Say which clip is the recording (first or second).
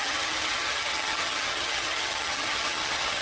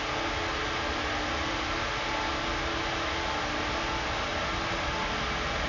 second